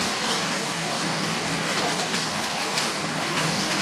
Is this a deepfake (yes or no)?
yes